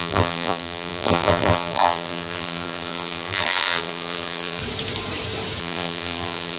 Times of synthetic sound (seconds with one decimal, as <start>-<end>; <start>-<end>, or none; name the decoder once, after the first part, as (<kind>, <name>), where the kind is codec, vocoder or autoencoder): 0.0-4.6 (vocoder, BigVGAN v2); 5.6-6.6